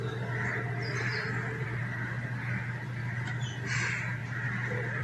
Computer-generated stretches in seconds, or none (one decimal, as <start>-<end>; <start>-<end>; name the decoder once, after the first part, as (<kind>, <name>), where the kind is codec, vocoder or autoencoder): 3.0-3.7 (vocoder, BigVGAN v2); 4.2-5.0